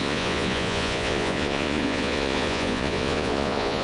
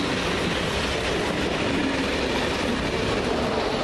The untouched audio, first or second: second